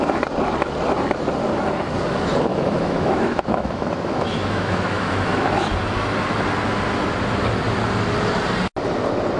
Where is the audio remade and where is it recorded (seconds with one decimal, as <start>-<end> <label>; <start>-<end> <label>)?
0.0-2.5 recorded; 2.5-5.7 remade; 5.7-9.4 recorded